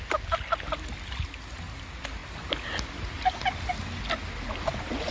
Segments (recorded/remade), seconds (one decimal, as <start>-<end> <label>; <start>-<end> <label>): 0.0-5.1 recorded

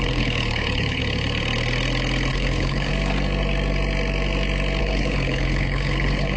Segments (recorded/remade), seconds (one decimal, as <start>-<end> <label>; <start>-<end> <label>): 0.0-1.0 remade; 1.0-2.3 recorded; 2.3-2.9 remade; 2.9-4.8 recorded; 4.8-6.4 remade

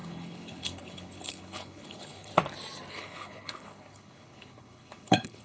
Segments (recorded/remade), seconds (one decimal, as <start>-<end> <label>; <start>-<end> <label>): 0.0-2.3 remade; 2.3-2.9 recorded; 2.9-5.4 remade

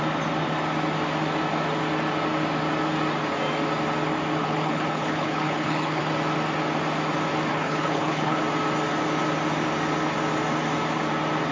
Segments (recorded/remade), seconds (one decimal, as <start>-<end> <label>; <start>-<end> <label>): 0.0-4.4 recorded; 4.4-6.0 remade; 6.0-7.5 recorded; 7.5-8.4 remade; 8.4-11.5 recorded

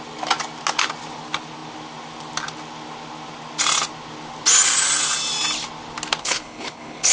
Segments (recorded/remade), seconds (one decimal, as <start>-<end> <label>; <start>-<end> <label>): 0.0-6.2 recorded; 6.2-7.1 remade

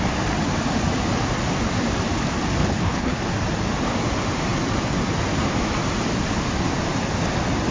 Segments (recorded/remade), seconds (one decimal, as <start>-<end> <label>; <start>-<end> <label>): 0.0-2.6 recorded; 2.6-3.2 remade; 3.2-7.7 recorded

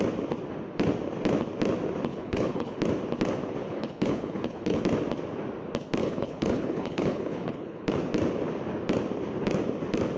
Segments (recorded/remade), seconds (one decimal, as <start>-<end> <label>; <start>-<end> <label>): 0.0-2.1 recorded; 2.1-2.8 remade; 2.8-3.6 recorded; 3.6-4.8 remade; 4.8-6.0 recorded; 6.0-7.8 remade; 7.8-10.2 recorded

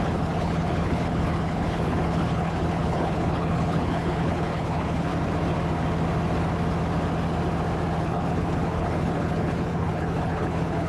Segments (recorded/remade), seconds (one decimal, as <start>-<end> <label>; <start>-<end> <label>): 0.0-5.1 remade; 5.1-8.0 recorded; 8.0-10.9 remade